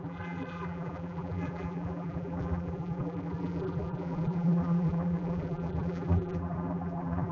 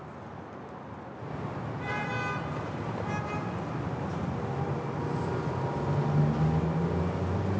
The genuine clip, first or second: second